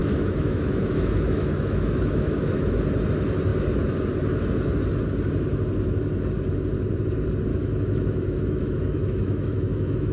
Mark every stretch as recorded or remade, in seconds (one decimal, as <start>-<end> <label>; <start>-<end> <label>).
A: 0.0-2.6 remade; 2.6-7.5 recorded; 7.5-10.1 remade